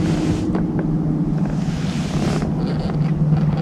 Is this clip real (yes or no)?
yes